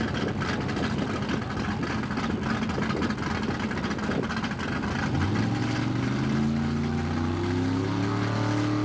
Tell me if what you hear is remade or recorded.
recorded